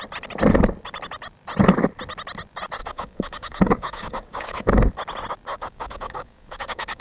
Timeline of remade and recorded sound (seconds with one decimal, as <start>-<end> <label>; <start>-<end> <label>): 0.0-2.8 recorded; 2.8-4.9 remade; 4.9-5.5 recorded; 5.5-7.0 remade